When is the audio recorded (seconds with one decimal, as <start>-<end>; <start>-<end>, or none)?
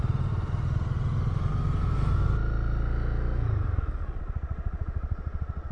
0.0-4.0